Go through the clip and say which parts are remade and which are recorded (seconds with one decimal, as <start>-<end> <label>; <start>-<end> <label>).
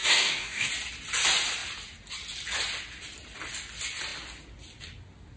0.0-0.7 remade; 0.7-5.4 recorded